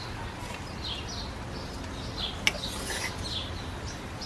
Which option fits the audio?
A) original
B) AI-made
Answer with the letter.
A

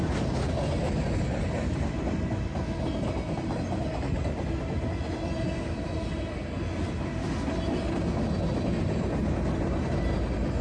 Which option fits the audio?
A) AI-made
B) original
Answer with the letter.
B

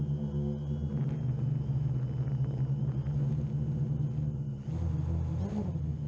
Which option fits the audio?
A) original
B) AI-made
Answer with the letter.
A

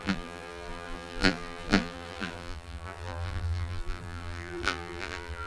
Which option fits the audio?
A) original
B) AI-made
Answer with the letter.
B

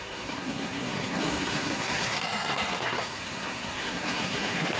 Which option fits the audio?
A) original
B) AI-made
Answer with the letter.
B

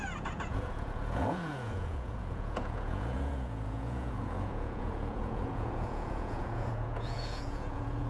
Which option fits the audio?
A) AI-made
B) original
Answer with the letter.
A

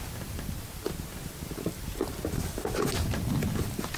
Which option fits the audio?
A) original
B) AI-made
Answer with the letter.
A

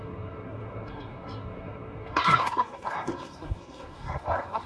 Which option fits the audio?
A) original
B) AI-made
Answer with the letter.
B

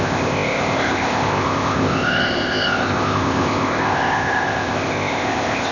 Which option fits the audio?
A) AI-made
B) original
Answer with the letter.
A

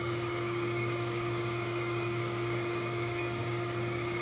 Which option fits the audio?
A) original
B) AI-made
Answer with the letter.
B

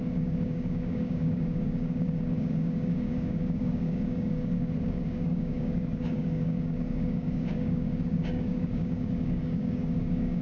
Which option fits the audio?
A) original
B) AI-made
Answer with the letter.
B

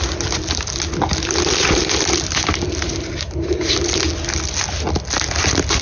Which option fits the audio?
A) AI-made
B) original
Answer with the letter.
B